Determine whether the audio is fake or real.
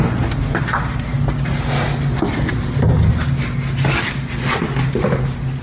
real